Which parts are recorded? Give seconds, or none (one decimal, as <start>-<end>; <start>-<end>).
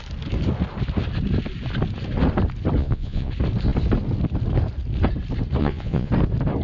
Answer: 0.0-2.8; 3.3-5.6; 6.1-6.6